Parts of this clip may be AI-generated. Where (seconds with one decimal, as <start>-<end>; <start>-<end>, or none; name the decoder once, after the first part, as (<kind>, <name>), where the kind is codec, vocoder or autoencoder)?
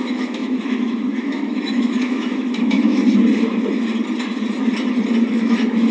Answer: 0.0-3.0 (autoencoder, DAC-VAE); 5.3-5.9